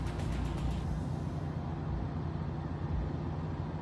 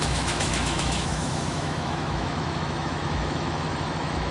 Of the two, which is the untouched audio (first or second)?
first